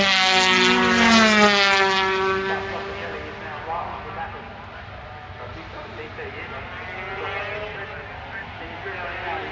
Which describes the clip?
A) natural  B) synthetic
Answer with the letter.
A